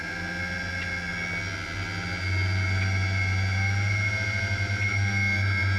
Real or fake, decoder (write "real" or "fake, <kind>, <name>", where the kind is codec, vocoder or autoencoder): real